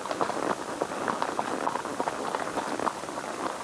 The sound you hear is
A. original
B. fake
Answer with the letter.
A